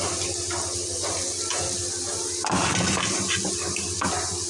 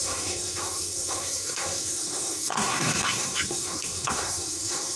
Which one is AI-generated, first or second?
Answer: second